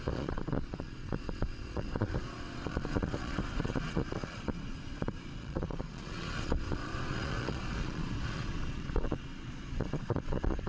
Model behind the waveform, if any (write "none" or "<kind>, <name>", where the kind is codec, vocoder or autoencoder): vocoder, Vocos